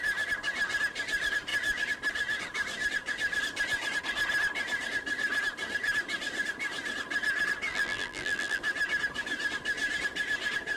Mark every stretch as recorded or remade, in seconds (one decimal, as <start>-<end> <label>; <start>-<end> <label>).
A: 0.0-7.7 recorded; 7.7-8.6 remade; 8.6-10.8 recorded